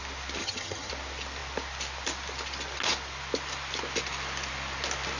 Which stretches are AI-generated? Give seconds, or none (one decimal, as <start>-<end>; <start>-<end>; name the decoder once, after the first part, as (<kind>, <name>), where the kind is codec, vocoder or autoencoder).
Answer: 0.4-0.9 (vocoder, HiFi-GAN)